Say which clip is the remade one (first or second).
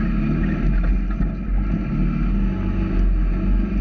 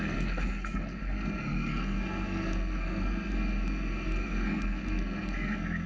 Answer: second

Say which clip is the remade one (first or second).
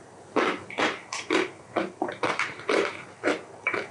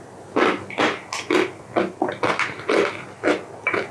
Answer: first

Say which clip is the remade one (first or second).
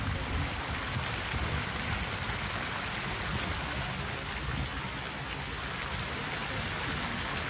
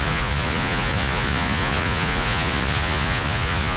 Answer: second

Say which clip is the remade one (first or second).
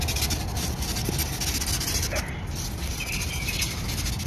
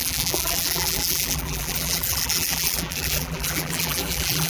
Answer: second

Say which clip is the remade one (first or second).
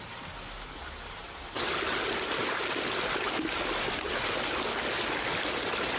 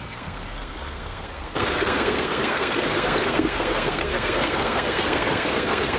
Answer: second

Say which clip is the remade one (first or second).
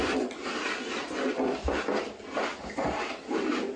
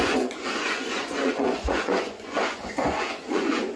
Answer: second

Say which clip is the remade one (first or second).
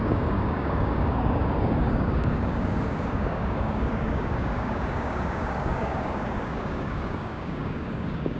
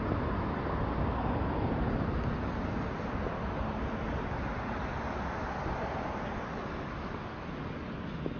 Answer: first